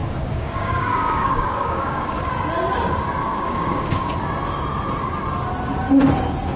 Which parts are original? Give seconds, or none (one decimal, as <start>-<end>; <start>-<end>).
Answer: 2.3-3.2; 4.1-6.6